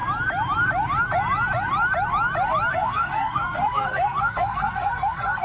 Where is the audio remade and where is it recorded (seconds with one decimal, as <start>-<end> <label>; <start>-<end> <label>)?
0.0-2.7 recorded; 2.7-5.4 remade